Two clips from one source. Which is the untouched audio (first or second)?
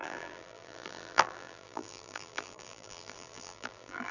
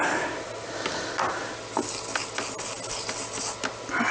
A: second